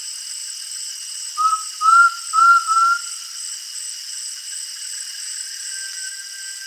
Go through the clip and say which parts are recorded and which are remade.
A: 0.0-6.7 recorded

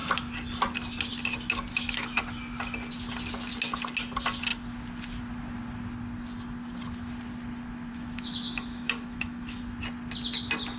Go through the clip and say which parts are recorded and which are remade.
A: 0.0-1.7 recorded; 1.7-2.2 remade; 2.2-7.9 recorded; 7.9-9.6 remade; 9.6-10.8 recorded

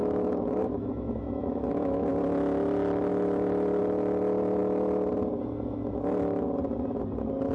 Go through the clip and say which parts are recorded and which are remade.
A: 0.0-2.1 remade; 2.1-3.1 recorded; 3.1-3.8 remade; 3.8-7.5 recorded